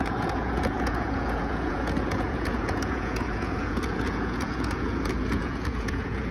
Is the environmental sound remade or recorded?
remade